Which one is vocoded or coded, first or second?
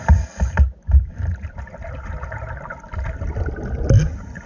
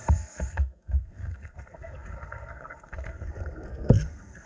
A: second